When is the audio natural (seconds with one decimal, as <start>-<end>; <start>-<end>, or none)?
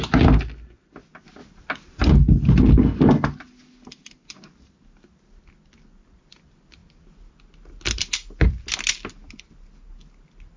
0.0-10.6